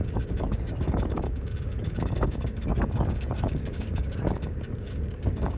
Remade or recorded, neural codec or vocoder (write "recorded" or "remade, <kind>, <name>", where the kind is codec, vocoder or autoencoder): remade, codec, DAC